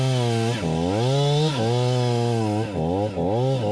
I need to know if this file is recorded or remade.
recorded